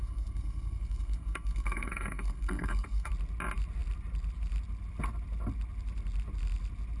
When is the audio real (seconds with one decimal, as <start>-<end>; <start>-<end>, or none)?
3.1-7.0